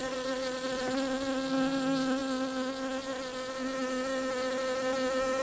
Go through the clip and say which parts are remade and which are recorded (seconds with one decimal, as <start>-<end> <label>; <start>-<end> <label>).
0.0-0.8 remade; 0.8-5.4 recorded